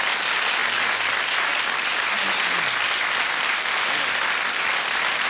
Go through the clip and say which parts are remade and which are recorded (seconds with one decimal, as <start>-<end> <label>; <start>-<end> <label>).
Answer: 0.0-5.3 recorded